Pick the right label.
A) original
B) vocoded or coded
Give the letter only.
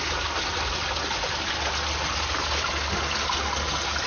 A